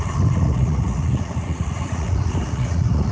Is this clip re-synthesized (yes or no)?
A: yes